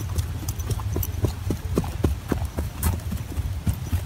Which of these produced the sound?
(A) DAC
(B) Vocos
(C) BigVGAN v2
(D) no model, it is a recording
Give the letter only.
D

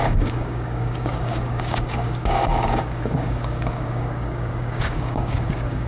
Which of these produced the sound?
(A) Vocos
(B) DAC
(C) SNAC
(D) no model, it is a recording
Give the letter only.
B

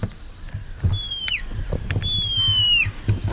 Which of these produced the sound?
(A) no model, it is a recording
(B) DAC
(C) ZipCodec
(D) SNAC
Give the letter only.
A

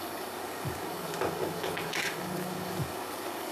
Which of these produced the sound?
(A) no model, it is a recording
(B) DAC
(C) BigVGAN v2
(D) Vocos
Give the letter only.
B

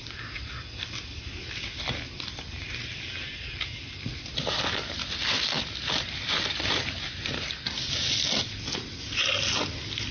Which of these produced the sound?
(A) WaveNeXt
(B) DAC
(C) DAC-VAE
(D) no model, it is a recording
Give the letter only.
D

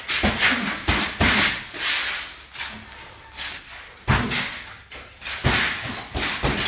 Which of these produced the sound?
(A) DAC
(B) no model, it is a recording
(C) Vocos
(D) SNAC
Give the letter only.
B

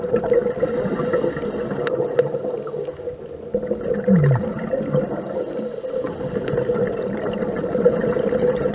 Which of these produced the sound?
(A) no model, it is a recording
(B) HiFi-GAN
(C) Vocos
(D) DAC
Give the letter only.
A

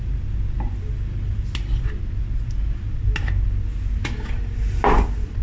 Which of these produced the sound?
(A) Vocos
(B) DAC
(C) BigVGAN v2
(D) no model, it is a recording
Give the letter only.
D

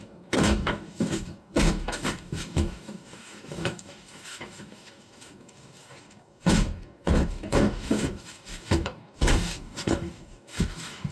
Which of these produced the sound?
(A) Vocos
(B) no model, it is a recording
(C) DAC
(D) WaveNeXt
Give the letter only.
C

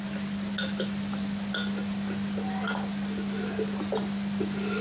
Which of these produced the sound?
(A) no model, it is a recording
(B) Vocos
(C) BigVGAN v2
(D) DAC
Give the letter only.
A